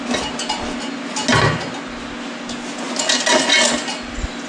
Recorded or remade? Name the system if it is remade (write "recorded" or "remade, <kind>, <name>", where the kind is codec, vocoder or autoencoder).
recorded